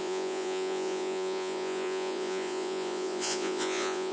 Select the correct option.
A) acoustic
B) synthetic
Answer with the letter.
B